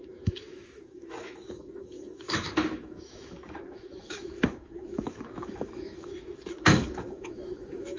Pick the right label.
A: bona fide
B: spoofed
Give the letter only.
B